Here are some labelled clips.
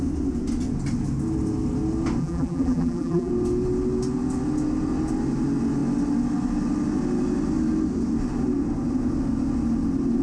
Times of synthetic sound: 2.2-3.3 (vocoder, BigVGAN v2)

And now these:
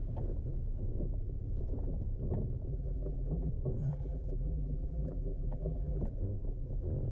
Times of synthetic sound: 2.7-3.5 (vocoder, BigVGAN v2); 3.9-6.0

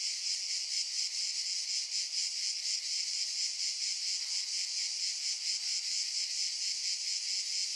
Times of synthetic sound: none

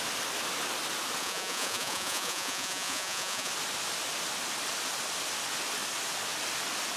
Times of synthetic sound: 1.2-3.5 (vocoder, Vocos)